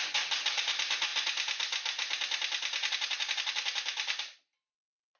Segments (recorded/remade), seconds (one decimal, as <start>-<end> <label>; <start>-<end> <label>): 0.0-5.2 recorded